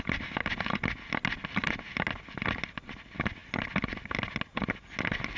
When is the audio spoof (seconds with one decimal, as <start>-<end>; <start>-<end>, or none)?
none